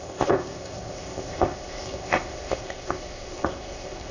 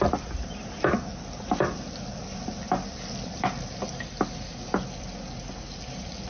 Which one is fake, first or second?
first